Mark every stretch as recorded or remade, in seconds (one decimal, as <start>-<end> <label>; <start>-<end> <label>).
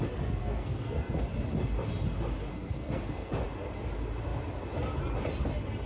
0.0-0.4 recorded; 0.4-1.2 remade; 1.2-2.5 recorded; 2.5-3.3 remade; 3.3-5.9 recorded